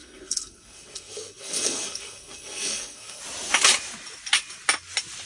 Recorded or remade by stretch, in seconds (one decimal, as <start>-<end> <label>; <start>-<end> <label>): 0.0-3.2 remade; 3.2-5.3 recorded